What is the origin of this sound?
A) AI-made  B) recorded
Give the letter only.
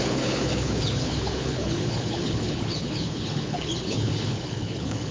A